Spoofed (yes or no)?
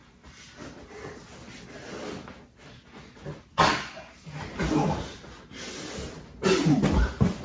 no